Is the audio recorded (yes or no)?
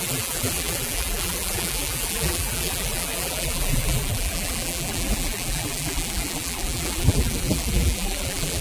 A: no